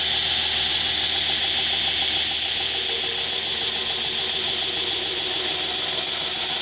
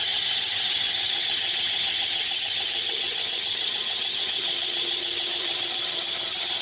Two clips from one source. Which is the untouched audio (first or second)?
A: first